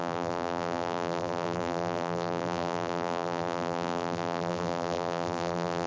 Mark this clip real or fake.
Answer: fake